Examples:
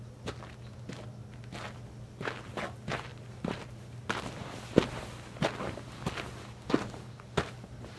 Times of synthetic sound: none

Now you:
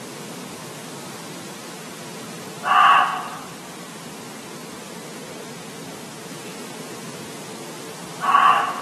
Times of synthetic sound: none

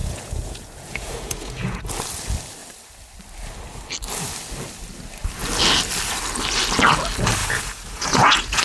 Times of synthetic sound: 0.0-1.8 (vocoder, Vocos); 7.4-8.6

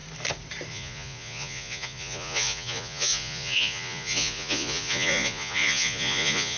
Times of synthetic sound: 0.7-6.6 (vocoder, Vocos)

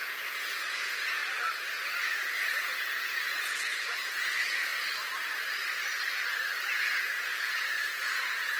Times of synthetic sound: 0.0-1.2 (vocoder, Vocos); 2.0-4.7; 6.6-8.6

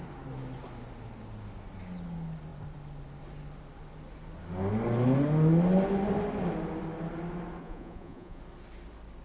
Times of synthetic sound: 7.6-8.4 (vocoder, Vocos)